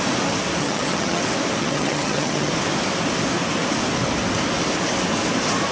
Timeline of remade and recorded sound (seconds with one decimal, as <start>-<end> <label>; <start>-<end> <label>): 0.0-0.6 recorded; 0.6-1.2 remade; 1.2-1.6 recorded; 1.6-2.5 remade; 2.5-5.7 recorded